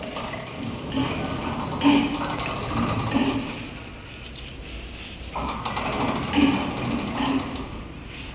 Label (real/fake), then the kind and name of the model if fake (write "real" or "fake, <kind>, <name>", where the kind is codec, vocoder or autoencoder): real